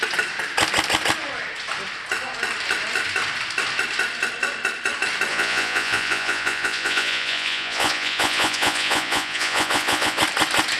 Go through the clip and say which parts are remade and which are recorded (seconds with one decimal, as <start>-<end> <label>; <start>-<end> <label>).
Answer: 0.0-5.3 recorded; 5.3-10.2 remade; 10.2-10.8 recorded